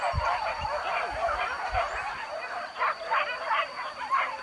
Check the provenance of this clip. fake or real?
real